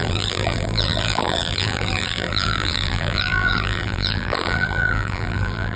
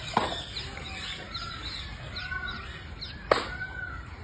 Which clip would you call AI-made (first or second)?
first